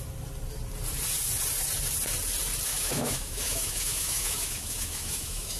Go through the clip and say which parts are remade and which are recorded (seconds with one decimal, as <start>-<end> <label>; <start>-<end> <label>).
0.0-2.7 recorded; 2.7-5.6 remade